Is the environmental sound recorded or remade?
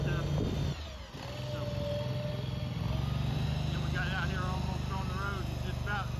recorded